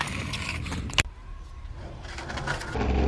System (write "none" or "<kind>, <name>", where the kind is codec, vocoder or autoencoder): none